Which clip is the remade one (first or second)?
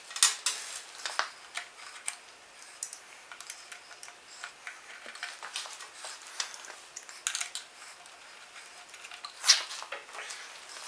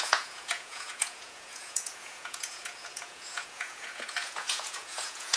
second